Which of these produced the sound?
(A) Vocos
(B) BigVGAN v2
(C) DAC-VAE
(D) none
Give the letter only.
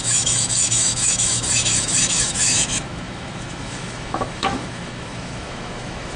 C